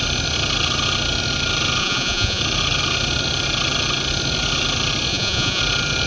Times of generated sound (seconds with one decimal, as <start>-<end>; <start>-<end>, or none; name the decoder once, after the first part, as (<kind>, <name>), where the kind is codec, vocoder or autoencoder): 1.8-2.4 (vocoder, Vocos); 5.1-5.6